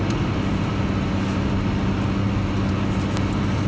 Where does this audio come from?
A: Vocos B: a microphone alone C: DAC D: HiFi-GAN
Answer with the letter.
B